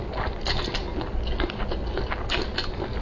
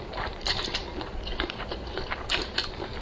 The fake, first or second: second